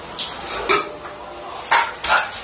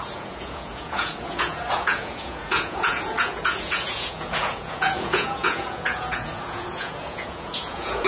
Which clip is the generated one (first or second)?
second